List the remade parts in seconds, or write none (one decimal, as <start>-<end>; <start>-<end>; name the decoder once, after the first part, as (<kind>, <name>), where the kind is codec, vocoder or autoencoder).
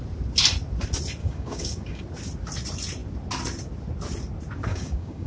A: 1.2-2.0 (codec, DAC); 4.7-5.3